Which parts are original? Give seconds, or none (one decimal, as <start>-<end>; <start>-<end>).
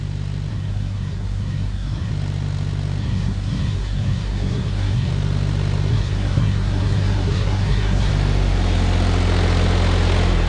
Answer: 0.0-0.5; 2.1-3.0; 5.1-5.9; 8.1-10.5